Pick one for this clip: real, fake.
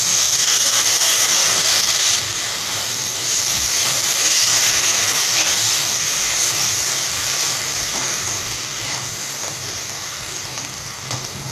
fake